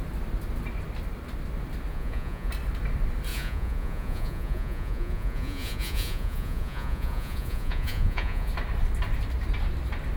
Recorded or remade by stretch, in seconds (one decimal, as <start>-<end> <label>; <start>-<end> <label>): 0.0-1.9 recorded; 1.9-2.5 remade; 2.5-3.3 recorded; 3.3-8.5 remade; 8.5-10.2 recorded